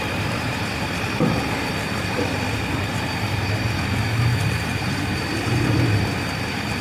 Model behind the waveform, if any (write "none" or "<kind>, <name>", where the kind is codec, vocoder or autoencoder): vocoder, BigVGAN v2